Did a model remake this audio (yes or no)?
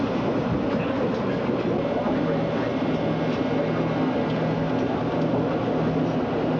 no